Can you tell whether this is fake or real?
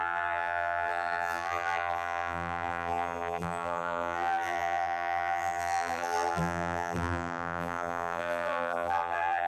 fake